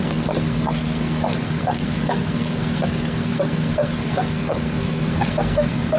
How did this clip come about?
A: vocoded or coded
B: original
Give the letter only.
A